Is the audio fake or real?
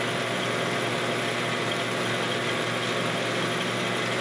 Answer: real